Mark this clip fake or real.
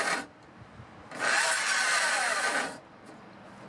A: real